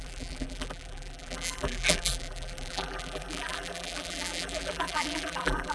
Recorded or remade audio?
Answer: remade